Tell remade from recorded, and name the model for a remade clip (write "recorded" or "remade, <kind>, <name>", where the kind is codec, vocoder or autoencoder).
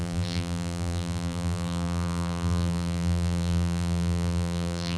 remade, vocoder, BigVGAN v2